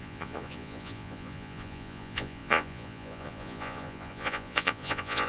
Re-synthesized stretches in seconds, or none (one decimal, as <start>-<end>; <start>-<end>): 0.0-5.3